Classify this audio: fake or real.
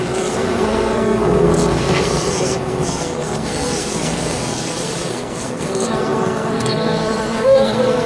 fake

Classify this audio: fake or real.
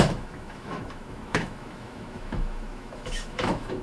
fake